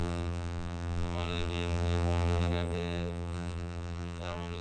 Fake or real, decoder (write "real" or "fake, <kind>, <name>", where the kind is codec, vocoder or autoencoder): fake, vocoder, BigVGAN v2